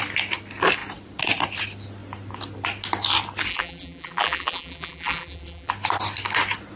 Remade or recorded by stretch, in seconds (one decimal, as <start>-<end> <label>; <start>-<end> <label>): 0.0-3.5 recorded; 3.5-5.7 remade; 5.7-6.8 recorded